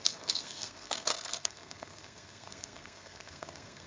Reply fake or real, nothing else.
fake